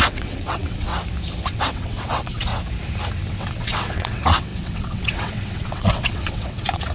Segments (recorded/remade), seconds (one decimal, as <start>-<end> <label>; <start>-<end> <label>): 0.0-0.9 remade; 0.9-1.5 recorded; 1.5-2.5 remade; 2.5-3.3 recorded; 3.3-6.9 remade